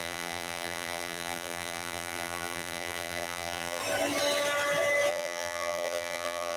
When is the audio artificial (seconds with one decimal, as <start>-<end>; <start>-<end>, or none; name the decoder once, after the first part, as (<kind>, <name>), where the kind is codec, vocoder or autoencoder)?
0.0-3.8 (vocoder, BigVGAN v2); 5.1-6.6